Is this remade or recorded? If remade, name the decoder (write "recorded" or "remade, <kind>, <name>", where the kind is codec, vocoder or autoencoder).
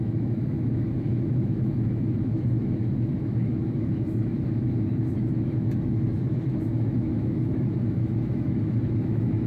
remade, autoencoder, DAC-VAE